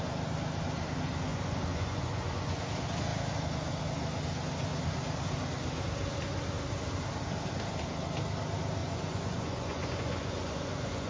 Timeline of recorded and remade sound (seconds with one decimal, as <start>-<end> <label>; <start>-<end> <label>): 0.0-1.3 recorded; 1.3-2.6 remade; 2.6-8.8 recorded; 8.8-11.1 remade